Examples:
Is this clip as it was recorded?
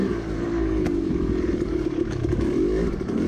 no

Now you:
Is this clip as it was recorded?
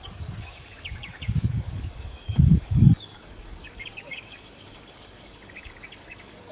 no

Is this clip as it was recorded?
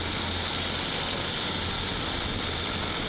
yes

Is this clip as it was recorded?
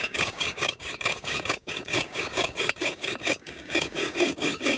no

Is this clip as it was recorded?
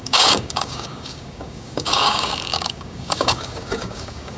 no